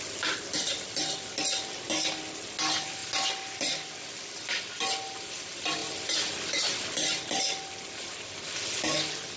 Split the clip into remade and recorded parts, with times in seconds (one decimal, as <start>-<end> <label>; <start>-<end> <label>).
0.0-9.4 recorded